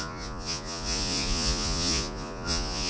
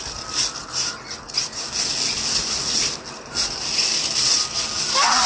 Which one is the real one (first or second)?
second